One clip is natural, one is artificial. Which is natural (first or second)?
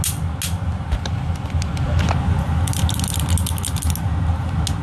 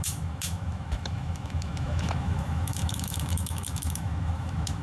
first